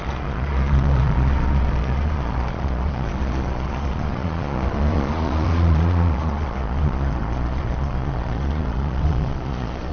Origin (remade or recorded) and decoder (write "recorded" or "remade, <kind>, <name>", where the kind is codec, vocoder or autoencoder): remade, vocoder, Vocos